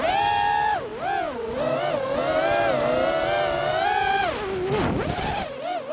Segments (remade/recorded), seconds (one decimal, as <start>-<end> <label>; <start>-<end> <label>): 0.0-5.9 recorded